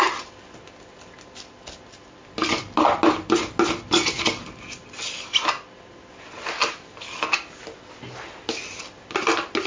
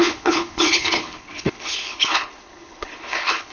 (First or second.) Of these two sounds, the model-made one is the second